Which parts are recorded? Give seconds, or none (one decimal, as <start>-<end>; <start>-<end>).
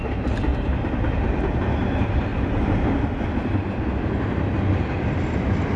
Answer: 0.0-0.5; 1.6-5.8